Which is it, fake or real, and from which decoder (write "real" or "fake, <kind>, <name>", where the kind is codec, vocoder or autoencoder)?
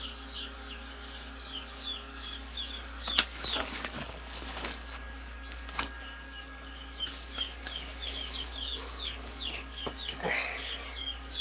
fake, codec, DAC